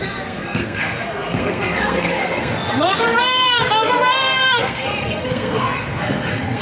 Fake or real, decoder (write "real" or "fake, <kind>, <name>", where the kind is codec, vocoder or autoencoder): fake, codec, SNAC